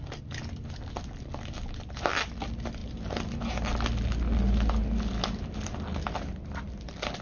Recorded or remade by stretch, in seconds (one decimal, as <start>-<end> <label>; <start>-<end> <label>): 0.0-7.2 recorded